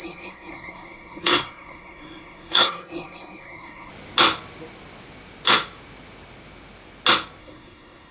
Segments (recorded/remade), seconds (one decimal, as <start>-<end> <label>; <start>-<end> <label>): 0.0-3.9 remade; 3.9-7.4 recorded; 7.4-8.1 remade